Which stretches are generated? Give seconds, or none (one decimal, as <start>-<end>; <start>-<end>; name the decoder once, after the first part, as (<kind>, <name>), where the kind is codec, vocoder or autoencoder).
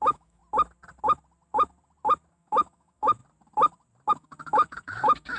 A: 0.0-0.4 (autoencoder, DAC-VAE); 2.3-3.2; 4.1-5.4